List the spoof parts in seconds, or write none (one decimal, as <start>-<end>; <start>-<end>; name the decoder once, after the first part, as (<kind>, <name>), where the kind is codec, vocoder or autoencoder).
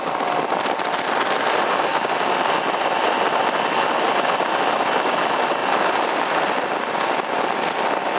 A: 1.9-4.5 (vocoder, BigVGAN v2); 5.6-8.2